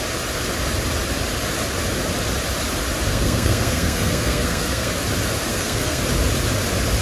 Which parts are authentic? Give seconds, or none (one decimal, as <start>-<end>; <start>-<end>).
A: 0.0-3.1; 4.9-5.5; 6.0-7.0